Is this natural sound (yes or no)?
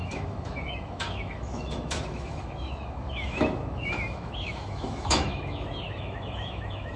no